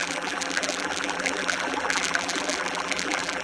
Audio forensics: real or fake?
fake